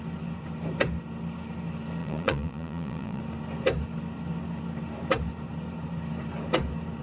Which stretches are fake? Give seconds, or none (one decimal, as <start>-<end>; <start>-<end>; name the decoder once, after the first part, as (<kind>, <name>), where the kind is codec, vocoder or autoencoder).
2.0-3.2 (vocoder, Vocos)